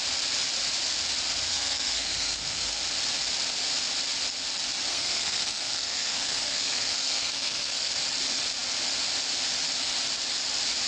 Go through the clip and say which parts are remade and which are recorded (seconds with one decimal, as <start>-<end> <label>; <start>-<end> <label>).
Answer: 0.0-1.5 recorded; 1.5-2.8 remade; 2.8-4.9 recorded; 4.9-7.9 remade; 7.9-10.9 recorded